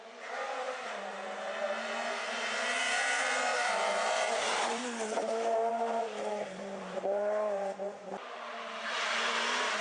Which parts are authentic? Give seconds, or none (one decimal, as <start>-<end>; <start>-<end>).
5.2-5.7